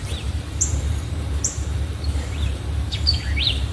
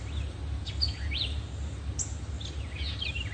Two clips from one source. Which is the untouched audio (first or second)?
second